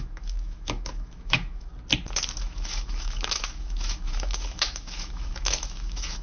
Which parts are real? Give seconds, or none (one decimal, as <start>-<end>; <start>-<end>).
1.7-2.4